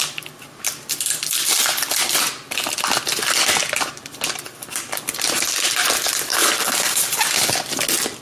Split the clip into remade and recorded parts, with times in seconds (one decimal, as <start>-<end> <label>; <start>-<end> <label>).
0.0-6.3 recorded; 6.3-7.1 remade; 7.1-8.2 recorded